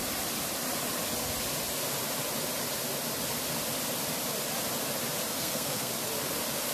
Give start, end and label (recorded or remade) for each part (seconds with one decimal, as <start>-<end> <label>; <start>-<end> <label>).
0.0-5.3 recorded; 5.3-5.9 remade; 5.9-6.7 recorded